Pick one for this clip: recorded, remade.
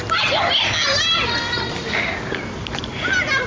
recorded